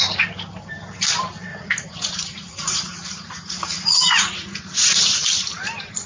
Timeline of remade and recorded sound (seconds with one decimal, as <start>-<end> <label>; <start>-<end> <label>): 0.0-1.5 recorded; 1.5-5.0 remade; 5.0-6.1 recorded